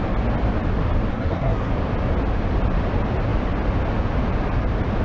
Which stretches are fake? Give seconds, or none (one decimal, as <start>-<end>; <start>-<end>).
1.1-1.7